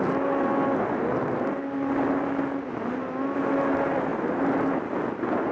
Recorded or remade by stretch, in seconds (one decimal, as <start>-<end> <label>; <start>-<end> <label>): 0.0-5.5 recorded